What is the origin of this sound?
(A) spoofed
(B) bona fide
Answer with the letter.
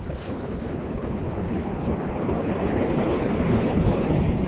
A